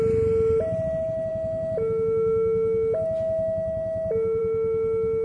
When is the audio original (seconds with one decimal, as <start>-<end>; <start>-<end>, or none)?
0.0-5.2

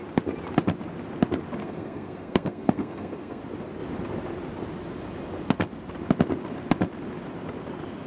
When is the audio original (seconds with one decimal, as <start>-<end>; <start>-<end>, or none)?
0.0-1.6; 3.4-8.1

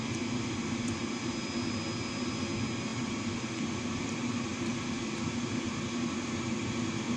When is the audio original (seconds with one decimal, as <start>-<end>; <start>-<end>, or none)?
0.0-4.5; 5.1-7.2

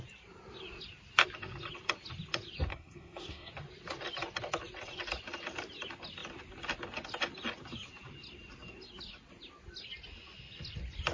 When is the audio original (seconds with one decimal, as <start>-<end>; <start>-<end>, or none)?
0.0-2.7; 3.5-11.1